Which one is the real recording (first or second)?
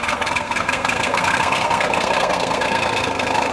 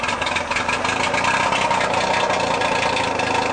second